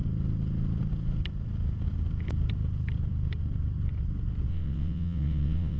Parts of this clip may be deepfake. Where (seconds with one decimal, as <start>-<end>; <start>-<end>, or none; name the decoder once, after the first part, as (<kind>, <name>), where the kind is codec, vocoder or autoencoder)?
4.5-5.8 (vocoder, WaveNeXt)